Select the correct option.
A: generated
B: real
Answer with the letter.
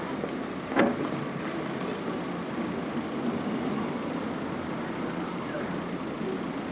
B